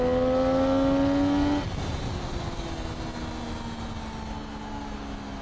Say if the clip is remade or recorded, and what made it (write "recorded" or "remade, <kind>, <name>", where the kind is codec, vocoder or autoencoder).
recorded